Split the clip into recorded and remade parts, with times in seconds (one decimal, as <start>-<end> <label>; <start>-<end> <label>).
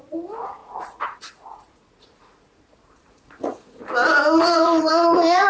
0.0-3.8 remade; 3.8-4.4 recorded; 4.4-5.5 remade